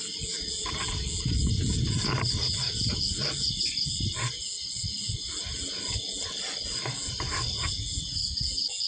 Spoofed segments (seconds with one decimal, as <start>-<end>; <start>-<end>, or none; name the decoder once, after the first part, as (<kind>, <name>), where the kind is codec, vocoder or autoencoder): none

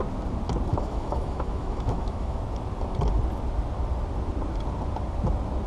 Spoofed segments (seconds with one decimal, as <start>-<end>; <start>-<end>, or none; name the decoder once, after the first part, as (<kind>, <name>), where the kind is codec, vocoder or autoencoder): 0.7-2.4 (autoencoder, DAC-VAE)

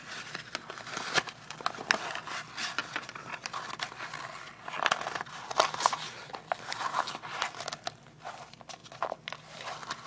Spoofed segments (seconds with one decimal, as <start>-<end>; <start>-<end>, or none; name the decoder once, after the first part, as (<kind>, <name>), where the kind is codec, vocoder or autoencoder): none

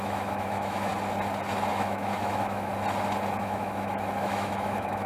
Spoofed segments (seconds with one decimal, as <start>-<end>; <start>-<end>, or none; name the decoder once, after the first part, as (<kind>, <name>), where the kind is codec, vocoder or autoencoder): 0.0-0.9 (autoencoder, DAC-VAE); 1.7-2.7; 3.4-5.1